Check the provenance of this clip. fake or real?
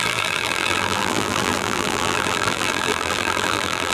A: fake